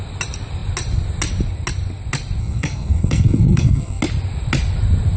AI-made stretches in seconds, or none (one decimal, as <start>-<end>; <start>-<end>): 2.4-4.0